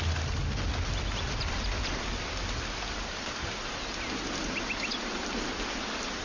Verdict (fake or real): real